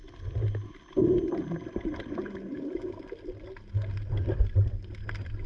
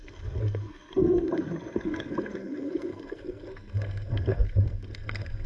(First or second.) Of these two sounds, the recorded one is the first